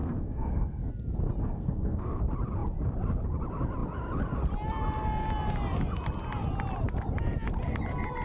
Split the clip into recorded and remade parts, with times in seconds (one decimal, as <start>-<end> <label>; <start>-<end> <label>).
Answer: 0.0-0.9 remade; 0.9-1.4 recorded; 1.4-2.2 remade; 2.2-8.2 recorded